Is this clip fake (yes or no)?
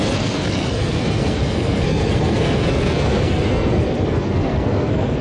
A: yes